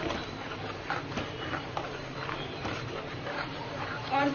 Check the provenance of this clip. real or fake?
fake